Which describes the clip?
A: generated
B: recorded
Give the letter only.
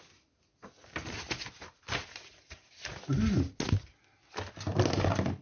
B